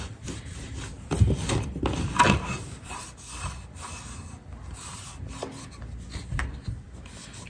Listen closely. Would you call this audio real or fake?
real